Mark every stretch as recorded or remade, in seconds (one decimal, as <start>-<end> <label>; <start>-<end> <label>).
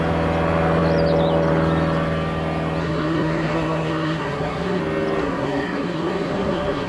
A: 0.0-2.8 recorded; 2.8-4.8 remade; 4.8-5.2 recorded; 5.2-6.9 remade